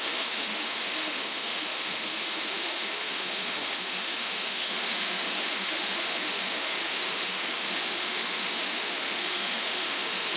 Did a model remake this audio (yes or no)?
yes